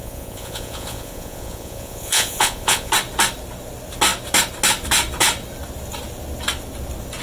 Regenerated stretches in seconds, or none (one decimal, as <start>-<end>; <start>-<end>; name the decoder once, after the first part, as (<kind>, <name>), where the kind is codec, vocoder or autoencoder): 0.0-2.9 (vocoder, Vocos)